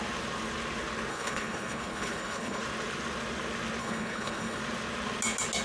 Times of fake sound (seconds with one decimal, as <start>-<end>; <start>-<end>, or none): 1.1-2.6; 3.8-4.6